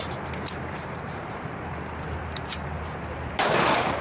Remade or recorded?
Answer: remade